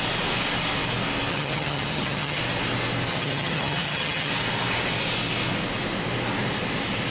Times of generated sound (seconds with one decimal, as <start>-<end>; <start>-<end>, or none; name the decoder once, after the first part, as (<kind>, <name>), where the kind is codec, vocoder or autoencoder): 1.3-2.4 (vocoder, HiFi-GAN); 3.1-4.3